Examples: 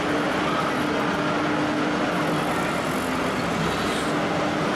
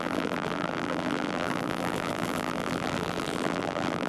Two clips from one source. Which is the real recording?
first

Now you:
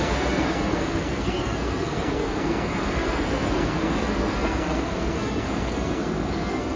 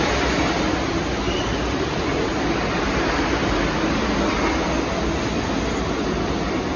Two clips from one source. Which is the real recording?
second